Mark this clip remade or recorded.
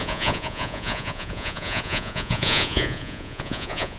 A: remade